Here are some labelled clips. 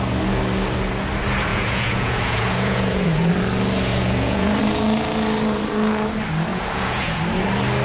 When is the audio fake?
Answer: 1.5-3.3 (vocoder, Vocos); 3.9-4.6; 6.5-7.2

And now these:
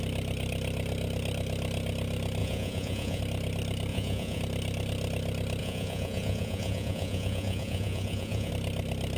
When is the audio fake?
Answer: 2.4-3.2 (vocoder, Vocos); 3.9-4.4; 5.6-8.5

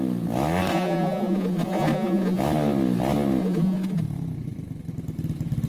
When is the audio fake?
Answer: 0.7-2.4 (vocoder, Vocos); 3.4-4.0

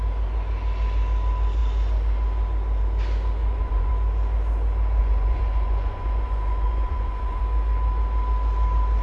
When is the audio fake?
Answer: 3.4-3.9 (vocoder, Vocos); 5.0-7.4

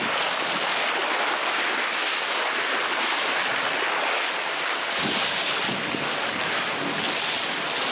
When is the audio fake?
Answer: none

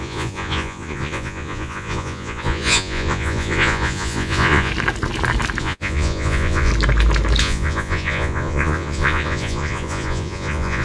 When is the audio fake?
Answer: 0.0-4.7 (vocoder, Vocos); 5.6-6.7; 7.4-10.8